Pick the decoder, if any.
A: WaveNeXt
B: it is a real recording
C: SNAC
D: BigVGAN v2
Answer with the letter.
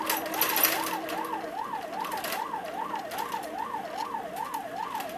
B